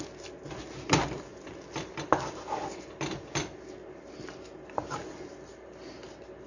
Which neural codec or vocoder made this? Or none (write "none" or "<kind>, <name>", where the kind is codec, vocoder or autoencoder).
none